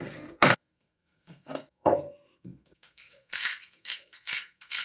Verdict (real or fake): fake